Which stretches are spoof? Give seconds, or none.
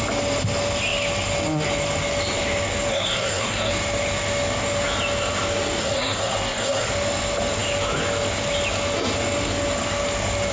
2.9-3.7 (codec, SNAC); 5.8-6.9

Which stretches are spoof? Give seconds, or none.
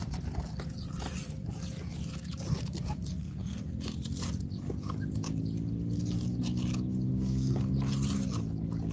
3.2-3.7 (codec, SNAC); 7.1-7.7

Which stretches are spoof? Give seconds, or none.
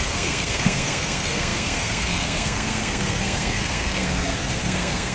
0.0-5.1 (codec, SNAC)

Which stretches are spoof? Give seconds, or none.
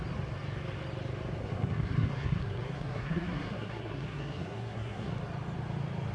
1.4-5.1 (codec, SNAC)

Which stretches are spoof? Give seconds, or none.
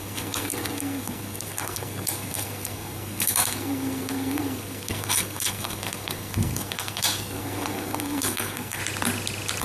0.0-8.8 (codec, SNAC)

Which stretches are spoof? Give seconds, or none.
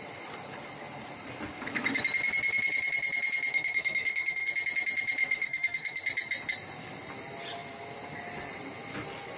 3.5-4.5 (codec, SNAC); 5.2-6.0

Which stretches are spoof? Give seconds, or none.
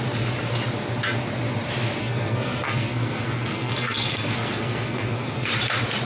2.0-5.5 (codec, SNAC)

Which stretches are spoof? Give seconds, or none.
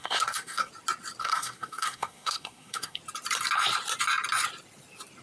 0.0-0.7 (codec, SNAC); 1.2-3.0